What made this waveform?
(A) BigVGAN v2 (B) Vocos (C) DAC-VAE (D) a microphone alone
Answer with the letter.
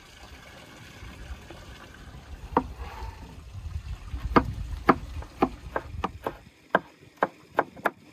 D